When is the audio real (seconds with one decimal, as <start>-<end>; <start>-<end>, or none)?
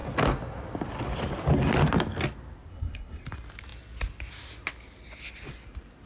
0.0-2.7; 3.2-6.1